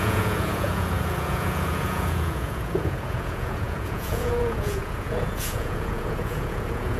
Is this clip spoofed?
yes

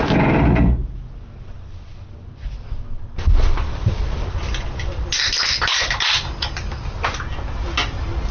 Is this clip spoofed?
no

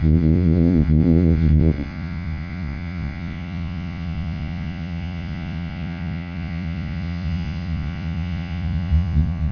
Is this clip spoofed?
yes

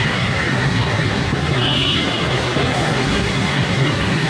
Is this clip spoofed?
yes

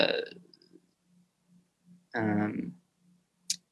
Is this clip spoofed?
no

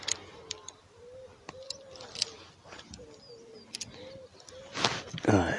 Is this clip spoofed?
no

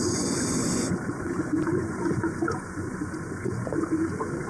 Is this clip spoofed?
yes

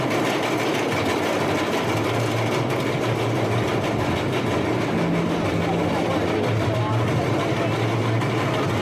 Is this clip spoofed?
no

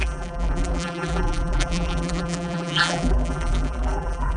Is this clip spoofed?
yes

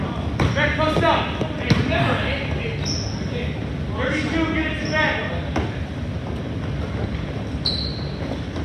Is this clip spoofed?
no